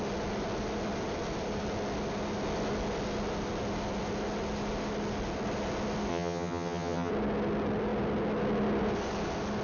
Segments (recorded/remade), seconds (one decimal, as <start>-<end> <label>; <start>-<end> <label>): 0.0-6.1 recorded; 6.1-7.1 remade; 7.1-9.6 recorded